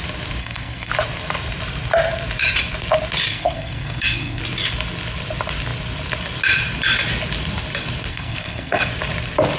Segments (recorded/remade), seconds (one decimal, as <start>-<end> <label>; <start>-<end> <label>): 0.0-0.4 recorded; 0.4-0.9 remade; 0.9-3.3 recorded; 3.3-4.4 remade; 4.4-8.1 recorded; 8.1-8.9 remade; 8.9-9.6 recorded